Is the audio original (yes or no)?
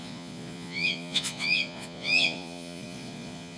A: no